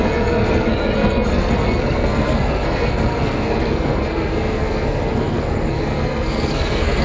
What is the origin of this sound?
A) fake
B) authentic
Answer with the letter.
A